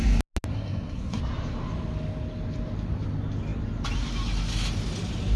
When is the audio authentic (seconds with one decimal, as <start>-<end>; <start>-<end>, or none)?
0.0-0.5; 1.2-5.4